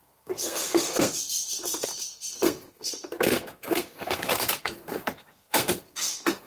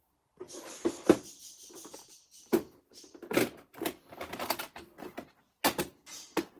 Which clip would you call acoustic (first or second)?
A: second